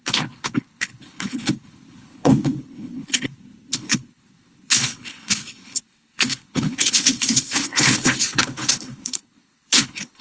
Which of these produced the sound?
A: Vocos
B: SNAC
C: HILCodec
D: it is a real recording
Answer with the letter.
C